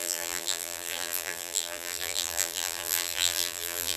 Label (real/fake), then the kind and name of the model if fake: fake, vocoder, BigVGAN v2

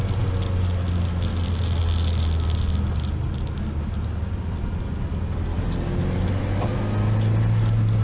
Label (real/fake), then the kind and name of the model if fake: real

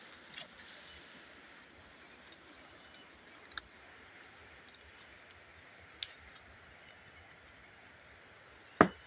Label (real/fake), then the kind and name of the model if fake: real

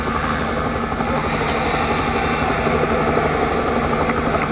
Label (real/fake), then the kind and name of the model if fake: real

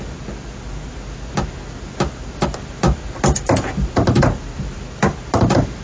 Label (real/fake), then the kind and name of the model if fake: fake, vocoder, BigVGAN v2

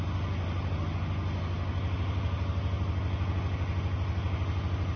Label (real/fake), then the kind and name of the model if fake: real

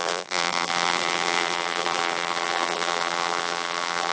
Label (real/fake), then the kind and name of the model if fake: fake, vocoder, BigVGAN v2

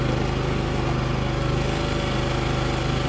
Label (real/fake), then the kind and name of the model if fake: real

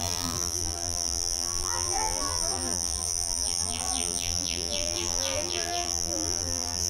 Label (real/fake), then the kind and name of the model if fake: fake, vocoder, BigVGAN v2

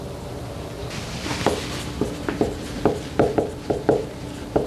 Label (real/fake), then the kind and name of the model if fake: real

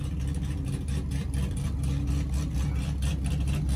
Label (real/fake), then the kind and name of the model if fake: real